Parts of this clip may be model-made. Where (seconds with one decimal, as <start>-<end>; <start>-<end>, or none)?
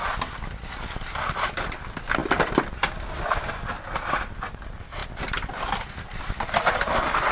none